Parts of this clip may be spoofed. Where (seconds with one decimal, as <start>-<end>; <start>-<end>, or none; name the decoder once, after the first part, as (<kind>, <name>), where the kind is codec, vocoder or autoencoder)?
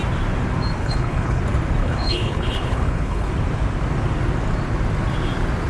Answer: 0.8-1.4 (codec, HILCodec); 1.8-3.3